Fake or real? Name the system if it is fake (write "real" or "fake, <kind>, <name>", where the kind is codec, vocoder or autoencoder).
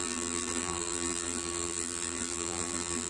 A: fake, vocoder, BigVGAN v2